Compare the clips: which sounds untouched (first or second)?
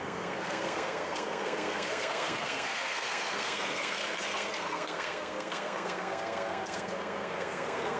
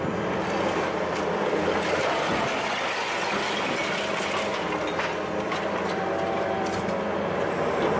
second